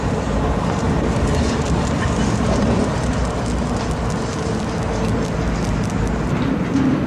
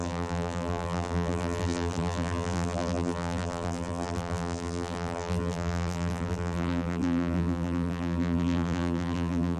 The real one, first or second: first